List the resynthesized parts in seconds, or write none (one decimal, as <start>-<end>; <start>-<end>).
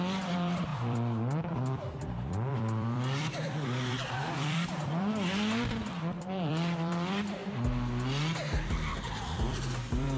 0.0-7.4; 8.9-10.2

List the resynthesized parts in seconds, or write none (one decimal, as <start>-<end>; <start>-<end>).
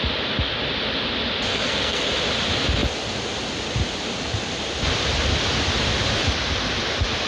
1.5-2.1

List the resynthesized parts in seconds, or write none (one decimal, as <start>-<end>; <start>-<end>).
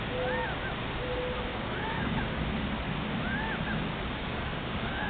1.5-2.4; 4.2-5.1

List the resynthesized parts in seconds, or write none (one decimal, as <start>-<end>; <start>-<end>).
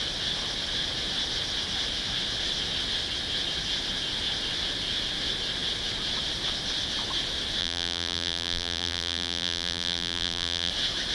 7.6-10.7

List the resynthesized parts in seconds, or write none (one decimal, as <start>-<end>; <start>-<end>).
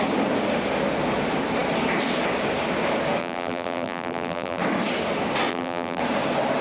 3.2-4.6; 5.5-6.0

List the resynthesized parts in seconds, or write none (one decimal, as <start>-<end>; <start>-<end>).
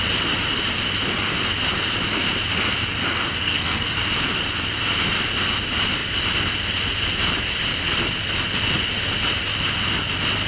3.4-3.9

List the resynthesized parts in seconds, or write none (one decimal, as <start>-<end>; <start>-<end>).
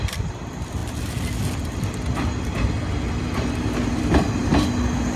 0.0-0.8; 3.9-4.5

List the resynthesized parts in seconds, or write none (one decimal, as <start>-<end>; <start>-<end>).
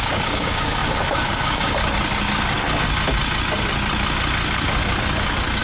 0.0-1.8